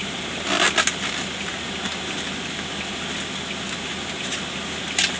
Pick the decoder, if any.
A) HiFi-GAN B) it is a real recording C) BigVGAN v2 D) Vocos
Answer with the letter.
B